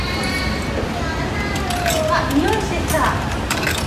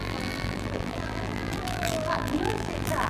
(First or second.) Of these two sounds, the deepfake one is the second